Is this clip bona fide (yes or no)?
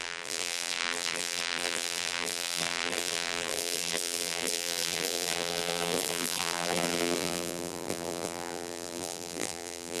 no